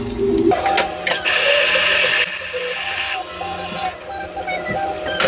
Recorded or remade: recorded